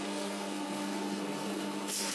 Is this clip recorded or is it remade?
remade